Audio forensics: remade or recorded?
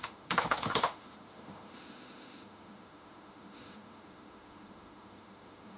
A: remade